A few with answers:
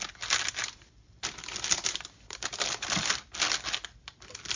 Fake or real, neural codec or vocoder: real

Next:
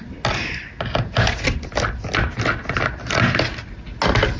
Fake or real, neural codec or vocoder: real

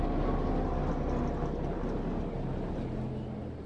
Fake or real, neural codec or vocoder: real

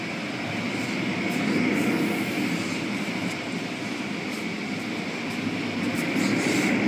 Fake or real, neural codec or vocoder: real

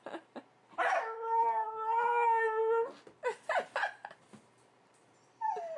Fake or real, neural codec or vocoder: real